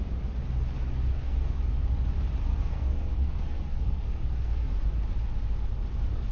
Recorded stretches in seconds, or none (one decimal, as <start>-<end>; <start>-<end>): 0.0-1.1; 1.6-2.5; 4.7-6.3